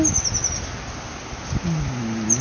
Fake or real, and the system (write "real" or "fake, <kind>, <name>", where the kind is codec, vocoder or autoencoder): real